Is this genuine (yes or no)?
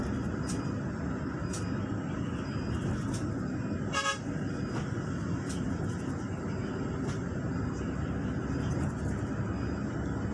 yes